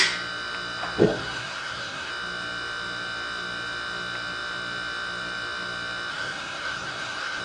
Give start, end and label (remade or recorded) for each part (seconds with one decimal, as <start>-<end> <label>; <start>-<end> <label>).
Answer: 0.0-1.0 recorded; 1.0-2.1 remade; 2.1-6.1 recorded; 6.1-7.4 remade